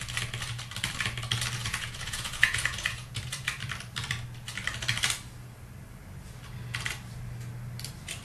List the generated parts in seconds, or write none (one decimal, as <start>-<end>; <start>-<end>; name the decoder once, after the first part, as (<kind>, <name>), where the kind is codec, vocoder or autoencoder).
1.6-3.2 (vocoder, Vocos)